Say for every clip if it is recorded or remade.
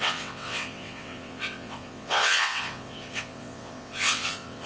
remade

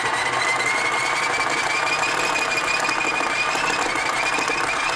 recorded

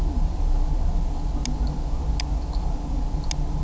recorded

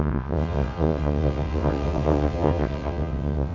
remade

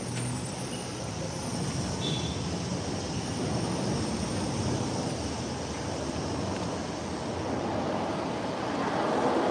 recorded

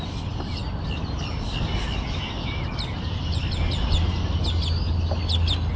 recorded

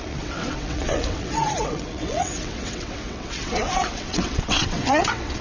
remade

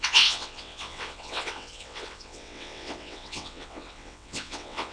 remade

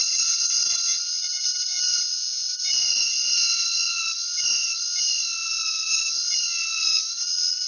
remade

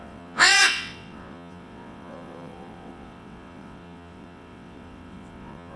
remade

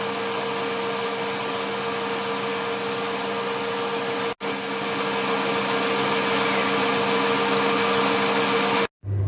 recorded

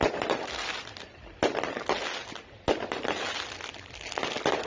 recorded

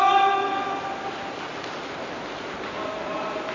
recorded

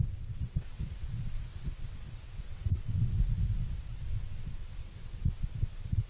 remade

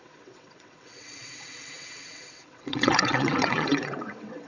remade